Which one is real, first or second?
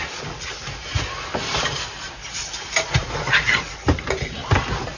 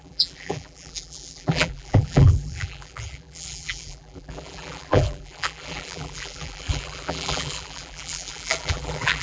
first